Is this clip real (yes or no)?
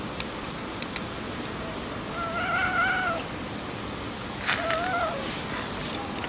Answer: yes